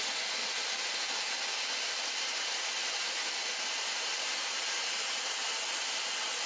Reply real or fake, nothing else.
real